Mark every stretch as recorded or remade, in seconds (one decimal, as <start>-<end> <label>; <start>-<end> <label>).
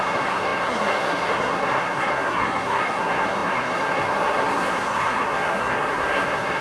0.0-6.6 remade